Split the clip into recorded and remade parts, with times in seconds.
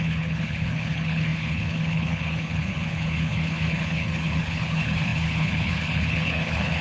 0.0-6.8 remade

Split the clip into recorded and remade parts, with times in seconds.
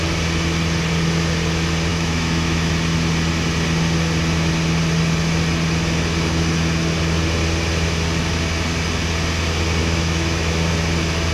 0.0-1.9 recorded; 1.9-2.7 remade; 2.7-9.8 recorded; 9.8-10.7 remade; 10.7-11.3 recorded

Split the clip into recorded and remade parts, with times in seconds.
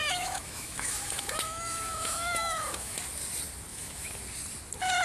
0.0-3.0 remade; 3.0-3.7 recorded; 3.7-4.2 remade; 4.2-5.0 recorded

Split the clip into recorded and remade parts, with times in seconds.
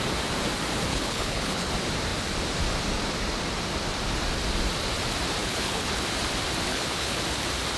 0.0-0.9 recorded; 0.9-1.7 remade; 1.7-5.4 recorded; 5.4-6.0 remade; 6.0-6.7 recorded; 6.7-7.2 remade; 7.2-7.8 recorded